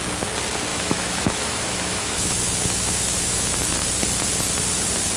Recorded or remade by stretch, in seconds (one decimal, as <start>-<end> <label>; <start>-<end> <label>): 0.0-0.7 recorded; 0.7-3.8 remade; 3.8-5.2 recorded